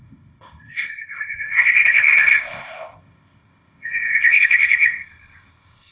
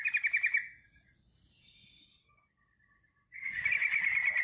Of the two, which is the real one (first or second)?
second